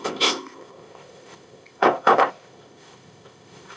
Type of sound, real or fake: fake